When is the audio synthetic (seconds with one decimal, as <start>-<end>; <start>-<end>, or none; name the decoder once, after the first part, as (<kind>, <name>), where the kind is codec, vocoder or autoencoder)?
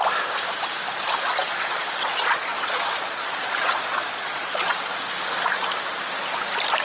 1.4-4.9 (vocoder, Vocos)